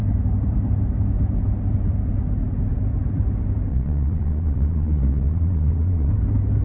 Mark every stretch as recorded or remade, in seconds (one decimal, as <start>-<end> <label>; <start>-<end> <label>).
0.0-3.7 recorded; 3.7-6.1 remade; 6.1-6.6 recorded

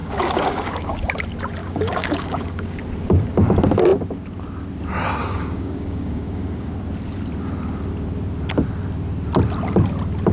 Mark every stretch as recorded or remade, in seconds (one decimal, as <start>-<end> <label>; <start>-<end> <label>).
0.0-1.1 remade; 1.1-1.6 recorded; 1.6-2.8 remade; 2.8-5.2 recorded; 5.2-6.7 remade; 6.7-10.3 recorded

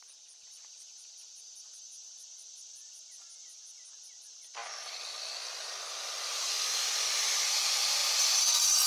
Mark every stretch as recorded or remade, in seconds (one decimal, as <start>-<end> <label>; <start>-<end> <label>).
0.0-4.6 recorded; 4.6-5.3 remade; 5.3-8.9 recorded

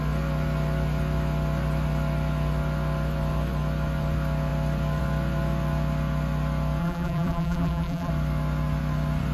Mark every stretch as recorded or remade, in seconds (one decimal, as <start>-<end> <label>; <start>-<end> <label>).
0.0-6.8 recorded; 6.8-8.1 remade; 8.1-9.3 recorded

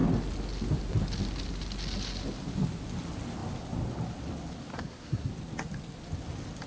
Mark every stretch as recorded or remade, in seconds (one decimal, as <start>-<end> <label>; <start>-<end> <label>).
0.0-4.7 recorded; 4.7-5.3 remade; 5.3-6.7 recorded

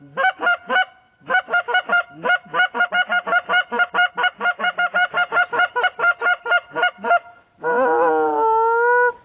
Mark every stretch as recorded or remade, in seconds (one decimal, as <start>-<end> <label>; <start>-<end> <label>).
0.0-4.6 recorded; 4.6-6.9 remade; 6.9-9.2 recorded

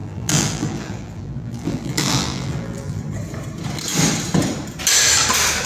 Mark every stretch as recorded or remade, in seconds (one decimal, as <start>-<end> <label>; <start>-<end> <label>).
0.0-3.0 remade; 3.0-5.7 recorded

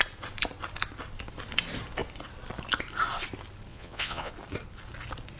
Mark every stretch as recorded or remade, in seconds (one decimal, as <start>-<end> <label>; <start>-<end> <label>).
0.0-3.7 recorded; 3.7-4.3 remade; 4.3-5.4 recorded